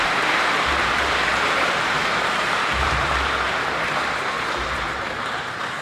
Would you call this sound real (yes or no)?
no